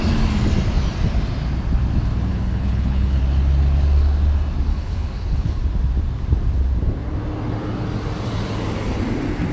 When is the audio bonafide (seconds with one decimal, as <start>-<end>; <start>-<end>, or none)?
0.0-2.3; 3.2-4.7; 5.6-9.5